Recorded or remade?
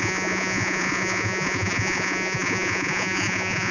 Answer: remade